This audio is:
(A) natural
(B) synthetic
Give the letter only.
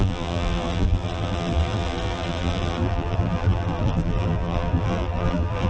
B